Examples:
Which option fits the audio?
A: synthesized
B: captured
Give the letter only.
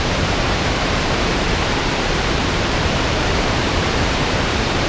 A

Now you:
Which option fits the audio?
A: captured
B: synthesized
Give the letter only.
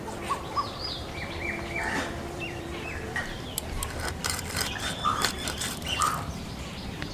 B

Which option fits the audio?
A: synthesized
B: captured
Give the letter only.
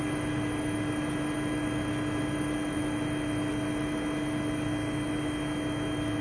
B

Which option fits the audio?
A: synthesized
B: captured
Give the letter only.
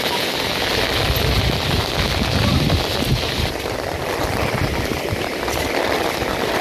B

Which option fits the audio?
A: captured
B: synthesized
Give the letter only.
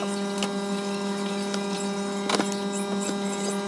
A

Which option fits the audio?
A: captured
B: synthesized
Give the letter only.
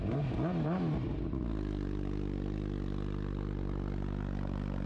A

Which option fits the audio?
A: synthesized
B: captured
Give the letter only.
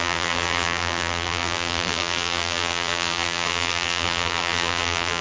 A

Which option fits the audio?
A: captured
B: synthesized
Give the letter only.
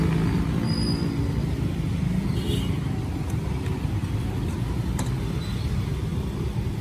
A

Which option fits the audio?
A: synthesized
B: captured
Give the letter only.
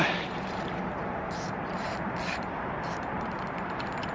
A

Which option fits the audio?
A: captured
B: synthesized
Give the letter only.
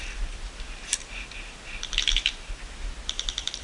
B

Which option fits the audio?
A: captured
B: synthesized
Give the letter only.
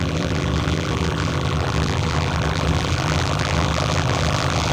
B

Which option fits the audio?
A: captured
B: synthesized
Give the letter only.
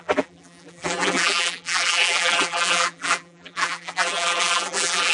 B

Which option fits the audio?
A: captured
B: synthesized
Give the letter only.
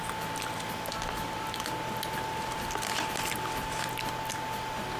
A